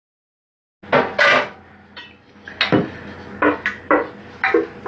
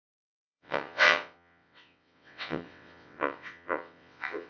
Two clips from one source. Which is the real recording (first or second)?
first